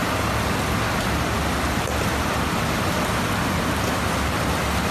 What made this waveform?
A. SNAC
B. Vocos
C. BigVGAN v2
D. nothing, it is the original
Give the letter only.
D